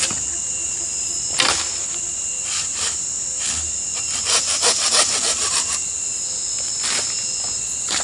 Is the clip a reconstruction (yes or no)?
no